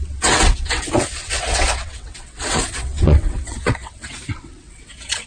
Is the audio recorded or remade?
remade